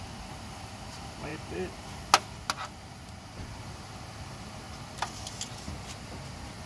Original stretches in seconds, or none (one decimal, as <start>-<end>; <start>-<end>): 0.0-6.7